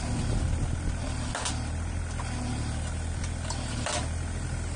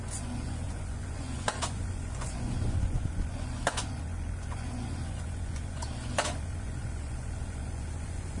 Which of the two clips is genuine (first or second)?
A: first